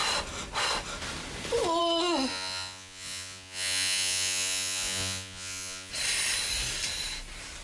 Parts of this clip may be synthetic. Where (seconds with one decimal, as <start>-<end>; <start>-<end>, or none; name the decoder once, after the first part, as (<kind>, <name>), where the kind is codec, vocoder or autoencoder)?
2.3-5.9 (vocoder, Vocos)